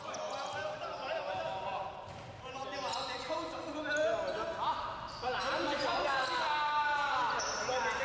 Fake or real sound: real